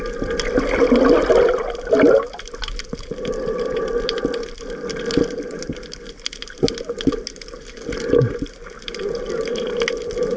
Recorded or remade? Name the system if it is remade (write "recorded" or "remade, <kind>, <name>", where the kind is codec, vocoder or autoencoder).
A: recorded